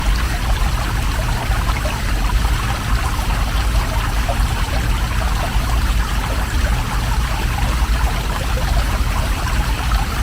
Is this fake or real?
real